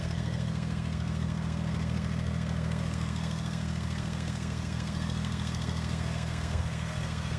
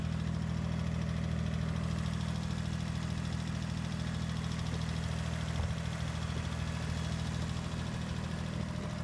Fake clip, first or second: first